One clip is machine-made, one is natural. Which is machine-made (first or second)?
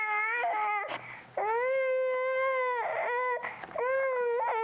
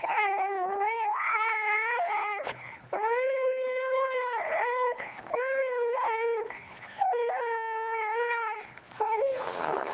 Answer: second